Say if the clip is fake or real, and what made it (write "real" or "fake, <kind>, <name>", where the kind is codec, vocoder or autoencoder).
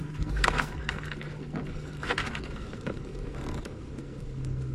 fake, codec, SNAC